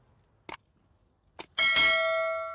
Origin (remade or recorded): recorded